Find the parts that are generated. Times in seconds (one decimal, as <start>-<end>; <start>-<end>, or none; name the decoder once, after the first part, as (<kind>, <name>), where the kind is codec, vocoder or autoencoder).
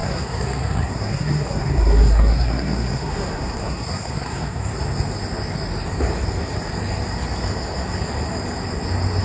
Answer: 0.0-4.7 (codec, SNAC)